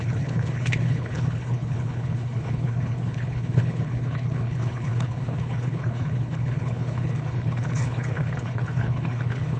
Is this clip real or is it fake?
fake